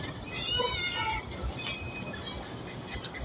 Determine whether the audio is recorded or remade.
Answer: recorded